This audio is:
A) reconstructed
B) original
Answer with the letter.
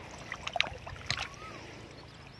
B